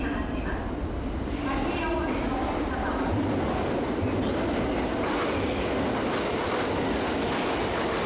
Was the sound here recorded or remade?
recorded